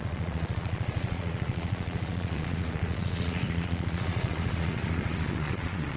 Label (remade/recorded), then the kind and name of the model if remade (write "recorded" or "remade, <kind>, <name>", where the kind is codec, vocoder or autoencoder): remade, vocoder, Vocos